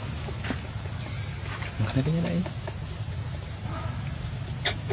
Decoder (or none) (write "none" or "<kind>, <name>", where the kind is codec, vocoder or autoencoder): none